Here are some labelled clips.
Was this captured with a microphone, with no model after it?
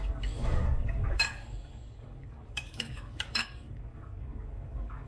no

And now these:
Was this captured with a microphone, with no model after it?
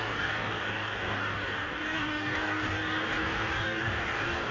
no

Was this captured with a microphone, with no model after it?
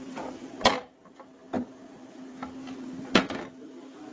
yes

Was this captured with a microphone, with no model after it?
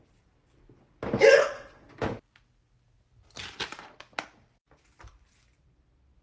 yes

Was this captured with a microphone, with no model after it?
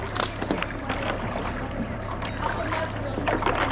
yes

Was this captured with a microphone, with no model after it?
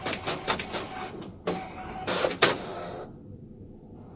yes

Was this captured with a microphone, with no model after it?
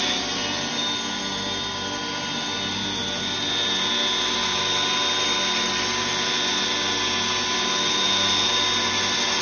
yes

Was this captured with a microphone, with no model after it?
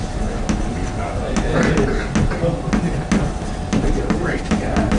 yes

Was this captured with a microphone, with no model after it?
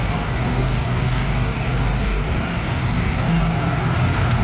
no